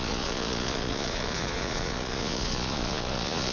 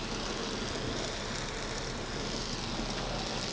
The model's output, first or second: first